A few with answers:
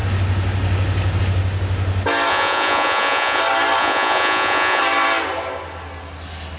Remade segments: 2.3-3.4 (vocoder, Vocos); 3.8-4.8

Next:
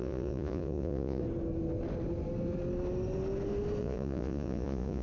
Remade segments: 0.0-1.2 (vocoder, Vocos); 3.8-5.0